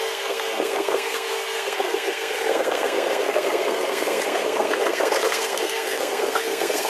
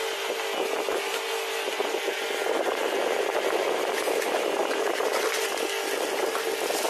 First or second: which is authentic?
second